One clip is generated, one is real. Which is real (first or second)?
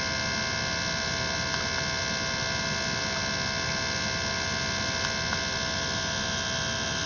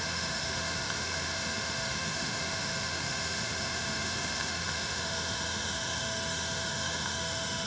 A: first